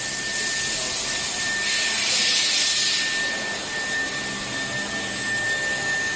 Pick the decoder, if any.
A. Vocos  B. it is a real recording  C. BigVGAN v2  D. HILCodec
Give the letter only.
B